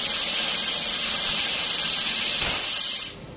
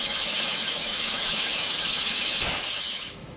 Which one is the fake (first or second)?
second